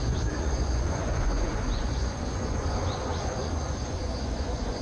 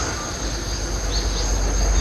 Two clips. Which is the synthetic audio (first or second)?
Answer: first